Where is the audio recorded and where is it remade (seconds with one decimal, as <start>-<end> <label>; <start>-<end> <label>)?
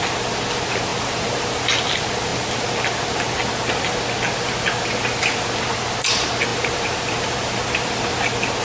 0.0-0.9 recorded; 0.9-1.6 remade; 1.6-6.5 recorded; 6.5-7.2 remade; 7.2-8.6 recorded